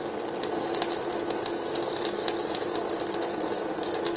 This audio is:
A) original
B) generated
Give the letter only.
A